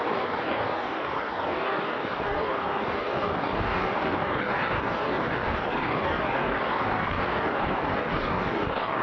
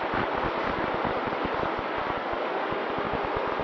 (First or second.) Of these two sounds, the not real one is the first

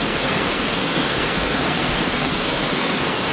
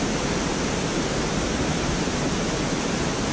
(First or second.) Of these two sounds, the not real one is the first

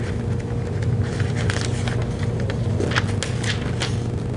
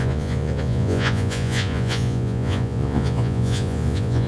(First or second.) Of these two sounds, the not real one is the second